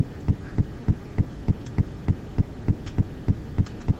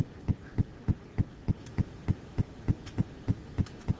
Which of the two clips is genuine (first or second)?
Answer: first